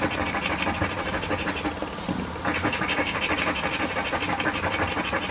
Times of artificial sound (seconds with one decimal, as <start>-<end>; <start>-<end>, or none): 2.6-3.2